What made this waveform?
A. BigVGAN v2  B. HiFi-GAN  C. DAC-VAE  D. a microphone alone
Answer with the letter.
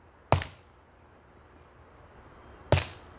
D